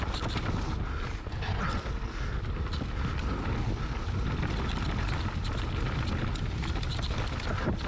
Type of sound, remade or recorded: recorded